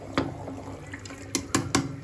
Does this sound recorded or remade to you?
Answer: recorded